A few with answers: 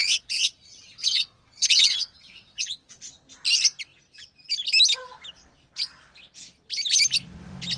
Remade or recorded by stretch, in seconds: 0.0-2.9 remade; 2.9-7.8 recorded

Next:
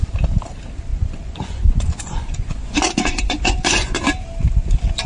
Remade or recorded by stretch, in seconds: 0.0-0.9 recorded; 0.9-4.0 remade; 4.0-5.1 recorded

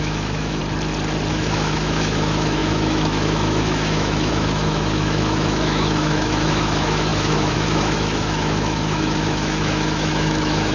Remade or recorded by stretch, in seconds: 0.0-0.6 remade; 0.6-1.3 recorded; 1.3-10.7 remade

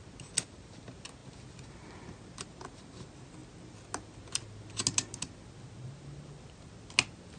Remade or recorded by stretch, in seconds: 0.0-7.4 recorded

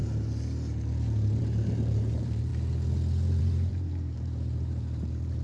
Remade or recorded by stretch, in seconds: 0.0-1.4 recorded; 1.4-2.5 remade; 2.5-3.4 recorded; 3.4-5.4 remade

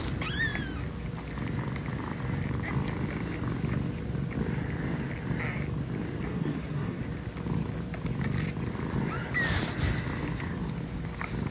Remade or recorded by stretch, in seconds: 0.0-6.3 recorded; 6.3-7.0 remade; 7.0-11.5 recorded